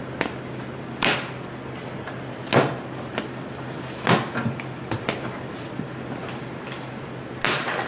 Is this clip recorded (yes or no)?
yes